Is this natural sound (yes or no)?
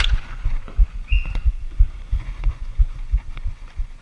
no